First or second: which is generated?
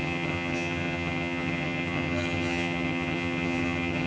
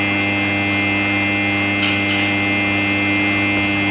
first